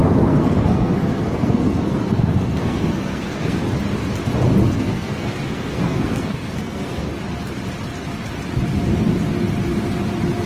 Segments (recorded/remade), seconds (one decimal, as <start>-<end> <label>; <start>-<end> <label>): 0.0-3.6 remade; 3.6-4.6 recorded; 4.6-7.1 remade; 7.1-10.5 recorded